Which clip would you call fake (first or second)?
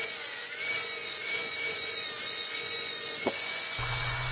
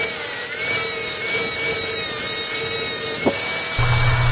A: first